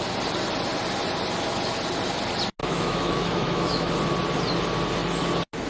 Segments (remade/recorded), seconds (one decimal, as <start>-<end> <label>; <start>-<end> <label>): 0.0-2.6 recorded; 2.6-3.9 remade; 3.9-5.7 recorded